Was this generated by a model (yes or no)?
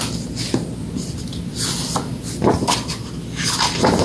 no